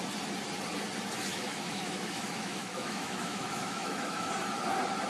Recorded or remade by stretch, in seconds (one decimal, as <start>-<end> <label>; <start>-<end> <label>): 0.0-1.3 recorded; 1.3-4.3 remade; 4.3-5.1 recorded